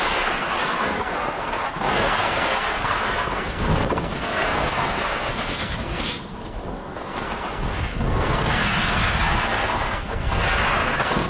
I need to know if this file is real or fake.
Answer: fake